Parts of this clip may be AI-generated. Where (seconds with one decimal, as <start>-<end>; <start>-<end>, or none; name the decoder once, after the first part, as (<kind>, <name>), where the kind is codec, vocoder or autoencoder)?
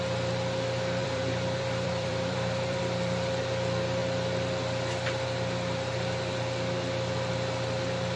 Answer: 1.0-2.8 (vocoder, BigVGAN v2)